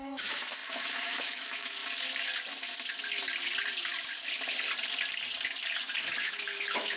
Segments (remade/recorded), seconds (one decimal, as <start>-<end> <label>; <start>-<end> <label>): 0.0-1.8 remade; 1.8-6.0 recorded; 6.0-7.0 remade